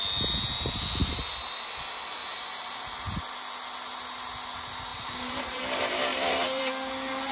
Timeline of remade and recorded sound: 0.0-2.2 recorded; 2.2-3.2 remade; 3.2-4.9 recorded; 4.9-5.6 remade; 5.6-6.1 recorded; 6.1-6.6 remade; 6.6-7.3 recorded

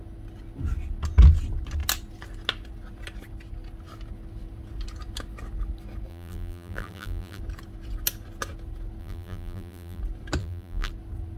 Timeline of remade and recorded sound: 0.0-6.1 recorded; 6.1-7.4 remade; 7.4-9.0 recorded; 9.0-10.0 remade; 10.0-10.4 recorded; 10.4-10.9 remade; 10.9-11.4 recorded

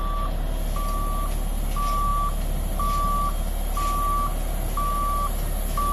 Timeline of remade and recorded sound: 0.0-5.9 recorded

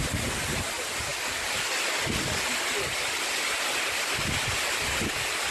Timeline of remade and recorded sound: 0.0-5.5 recorded

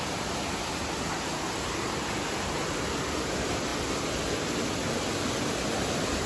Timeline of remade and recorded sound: 0.0-6.3 recorded